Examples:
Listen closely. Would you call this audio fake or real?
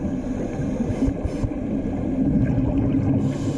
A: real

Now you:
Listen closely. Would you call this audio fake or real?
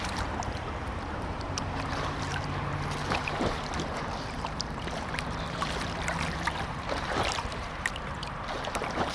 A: fake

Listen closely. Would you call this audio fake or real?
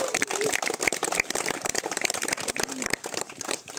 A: fake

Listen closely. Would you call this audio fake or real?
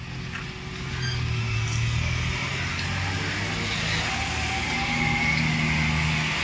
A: real